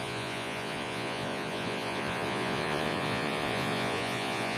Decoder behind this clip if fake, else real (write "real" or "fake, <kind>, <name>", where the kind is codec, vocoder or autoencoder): fake, vocoder, Vocos